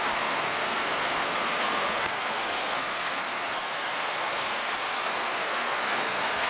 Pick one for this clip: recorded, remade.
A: remade